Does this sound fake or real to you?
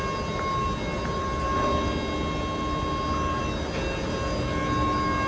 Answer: real